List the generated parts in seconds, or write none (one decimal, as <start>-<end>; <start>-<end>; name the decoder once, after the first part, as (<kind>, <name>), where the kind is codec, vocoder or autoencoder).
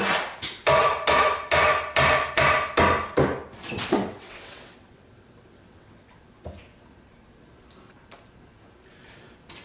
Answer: 3.6-6.1 (vocoder, WaveNeXt)